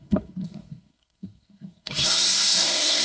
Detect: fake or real fake